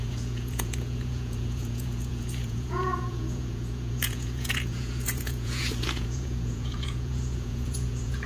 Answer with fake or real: fake